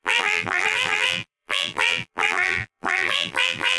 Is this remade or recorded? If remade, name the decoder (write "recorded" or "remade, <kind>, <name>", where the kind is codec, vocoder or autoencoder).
remade, vocoder, BigVGAN v2